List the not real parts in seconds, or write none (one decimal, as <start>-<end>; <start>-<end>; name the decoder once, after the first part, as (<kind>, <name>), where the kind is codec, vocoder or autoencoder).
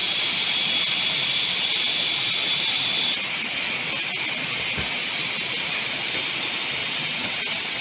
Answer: 6.8-7.8 (vocoder, WaveNeXt)